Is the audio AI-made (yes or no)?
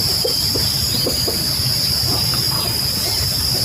no